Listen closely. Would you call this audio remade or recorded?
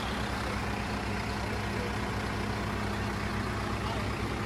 recorded